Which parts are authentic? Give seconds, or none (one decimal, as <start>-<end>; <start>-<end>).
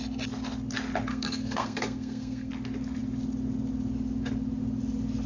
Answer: 0.0-1.1; 2.5-5.3